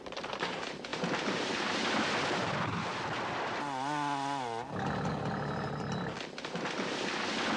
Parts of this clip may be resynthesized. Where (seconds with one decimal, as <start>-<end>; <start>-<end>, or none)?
0.0-2.9